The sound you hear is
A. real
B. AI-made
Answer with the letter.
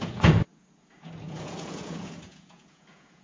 B